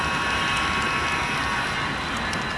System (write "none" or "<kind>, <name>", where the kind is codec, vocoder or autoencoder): none